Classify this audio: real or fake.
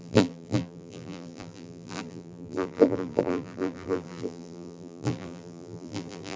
fake